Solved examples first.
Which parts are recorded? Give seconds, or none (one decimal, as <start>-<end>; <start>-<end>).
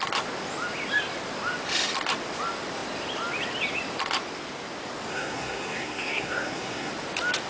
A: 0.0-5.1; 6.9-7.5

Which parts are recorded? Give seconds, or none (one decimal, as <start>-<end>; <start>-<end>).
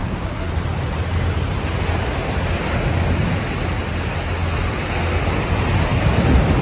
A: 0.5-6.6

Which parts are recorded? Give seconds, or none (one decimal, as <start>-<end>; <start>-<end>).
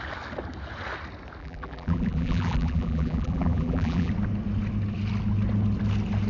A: 0.0-1.4; 4.1-6.3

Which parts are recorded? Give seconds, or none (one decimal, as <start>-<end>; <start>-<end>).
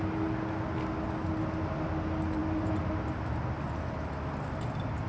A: 0.0-5.1